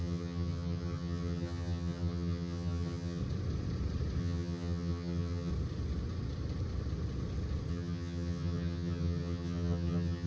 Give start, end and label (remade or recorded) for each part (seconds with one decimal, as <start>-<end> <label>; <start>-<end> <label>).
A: 0.0-3.2 remade; 3.2-4.2 recorded; 4.2-5.5 remade; 5.5-7.7 recorded; 7.7-10.3 remade